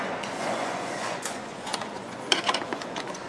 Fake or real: fake